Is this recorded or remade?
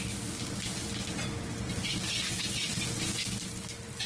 recorded